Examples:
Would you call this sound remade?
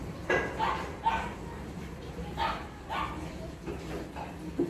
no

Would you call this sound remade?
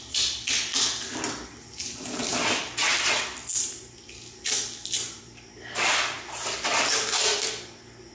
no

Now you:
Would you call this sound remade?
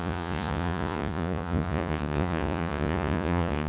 yes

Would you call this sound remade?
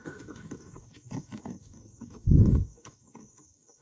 yes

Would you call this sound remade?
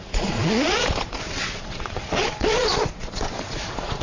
yes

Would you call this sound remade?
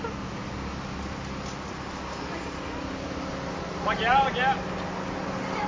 no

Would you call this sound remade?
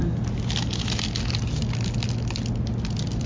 no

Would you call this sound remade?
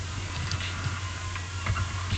yes